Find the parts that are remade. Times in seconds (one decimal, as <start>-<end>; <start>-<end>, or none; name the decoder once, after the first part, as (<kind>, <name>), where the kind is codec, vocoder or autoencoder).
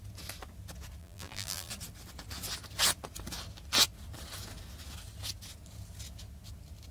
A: 1.0-1.7 (vocoder, BigVGAN v2)